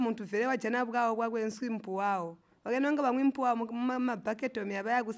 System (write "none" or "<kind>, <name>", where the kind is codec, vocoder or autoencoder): none